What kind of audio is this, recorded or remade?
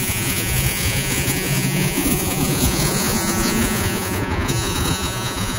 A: remade